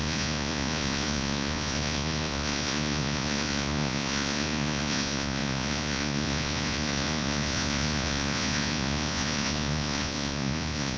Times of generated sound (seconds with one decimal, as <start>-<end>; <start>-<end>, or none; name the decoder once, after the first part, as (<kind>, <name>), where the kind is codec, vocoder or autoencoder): 0.0-11.0 (vocoder, Vocos)